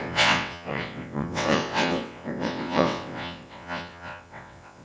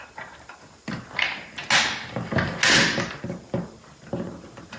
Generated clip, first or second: first